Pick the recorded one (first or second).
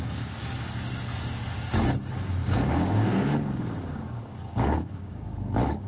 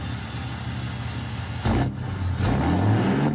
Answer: second